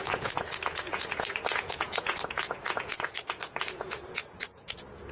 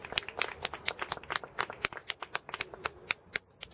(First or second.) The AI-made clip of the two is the first